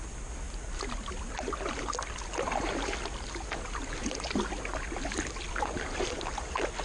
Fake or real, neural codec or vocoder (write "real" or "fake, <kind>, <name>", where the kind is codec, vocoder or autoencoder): real